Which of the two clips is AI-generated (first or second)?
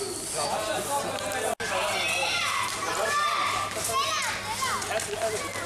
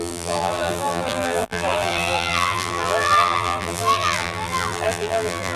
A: second